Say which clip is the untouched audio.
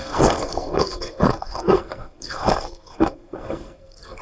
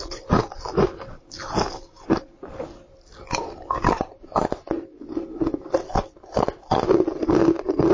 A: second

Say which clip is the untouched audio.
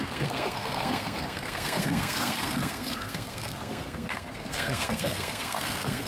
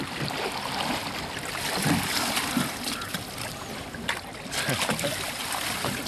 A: second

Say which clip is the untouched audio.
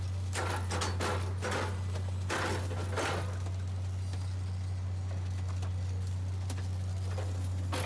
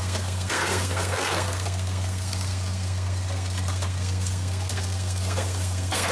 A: first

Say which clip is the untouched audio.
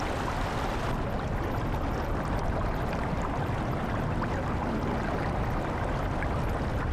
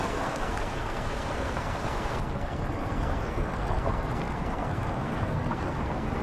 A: first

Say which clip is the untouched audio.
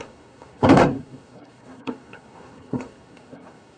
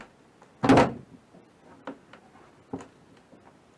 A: second